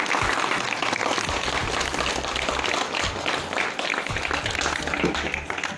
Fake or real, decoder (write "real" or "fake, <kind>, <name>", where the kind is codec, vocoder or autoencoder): real